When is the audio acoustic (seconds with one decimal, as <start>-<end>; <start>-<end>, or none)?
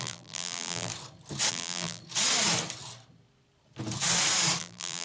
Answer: 0.9-1.5; 2.0-4.6